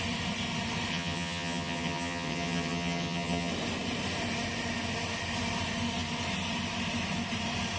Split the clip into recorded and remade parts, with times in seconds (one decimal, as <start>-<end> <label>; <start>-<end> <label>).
0.0-0.9 recorded; 0.9-3.5 remade; 3.5-7.8 recorded